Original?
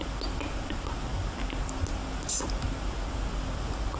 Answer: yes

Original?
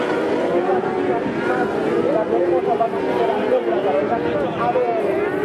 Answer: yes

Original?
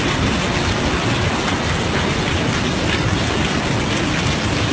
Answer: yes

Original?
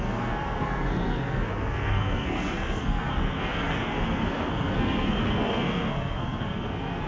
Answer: no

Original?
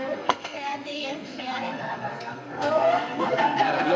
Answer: no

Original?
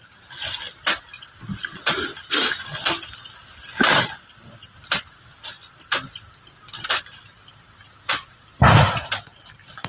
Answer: yes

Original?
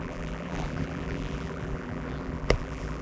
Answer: no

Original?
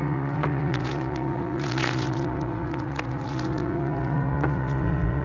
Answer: no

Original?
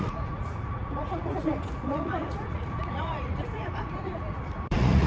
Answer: no